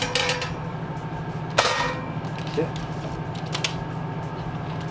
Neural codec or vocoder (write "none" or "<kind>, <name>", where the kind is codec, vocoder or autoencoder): none